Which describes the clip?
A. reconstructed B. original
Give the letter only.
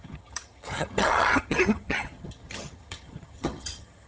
A